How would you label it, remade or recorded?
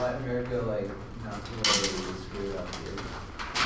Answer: recorded